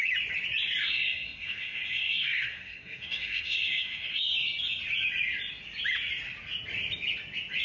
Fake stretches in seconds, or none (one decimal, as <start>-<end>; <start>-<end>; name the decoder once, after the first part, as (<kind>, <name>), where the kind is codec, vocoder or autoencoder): 0.8-4.2 (codec, SNAC)